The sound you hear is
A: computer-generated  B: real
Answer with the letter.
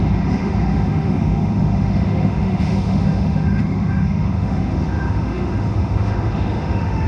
A